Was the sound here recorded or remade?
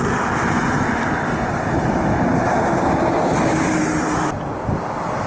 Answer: recorded